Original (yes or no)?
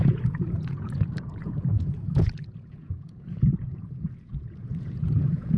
no